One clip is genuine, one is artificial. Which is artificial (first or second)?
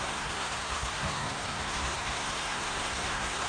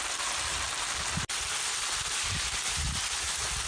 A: first